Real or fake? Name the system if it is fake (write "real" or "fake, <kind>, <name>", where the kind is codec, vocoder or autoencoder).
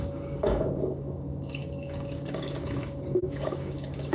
fake, codec, DAC